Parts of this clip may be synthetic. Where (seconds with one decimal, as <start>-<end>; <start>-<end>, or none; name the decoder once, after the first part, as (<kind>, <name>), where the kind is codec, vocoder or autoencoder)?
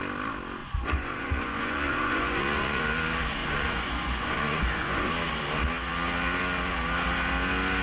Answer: 0.6-2.8 (vocoder, Vocos); 3.4-5.1